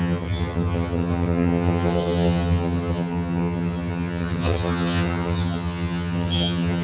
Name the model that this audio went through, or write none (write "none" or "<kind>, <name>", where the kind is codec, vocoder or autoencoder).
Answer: vocoder, HiFi-GAN